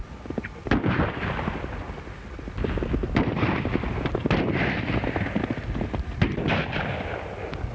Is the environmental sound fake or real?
real